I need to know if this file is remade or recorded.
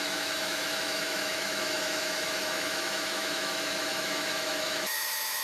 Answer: remade